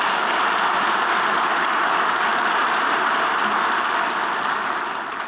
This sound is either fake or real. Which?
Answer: real